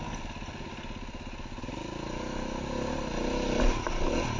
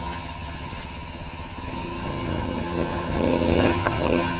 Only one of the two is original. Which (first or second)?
first